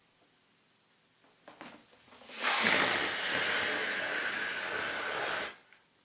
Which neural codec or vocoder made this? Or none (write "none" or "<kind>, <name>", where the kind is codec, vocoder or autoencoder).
none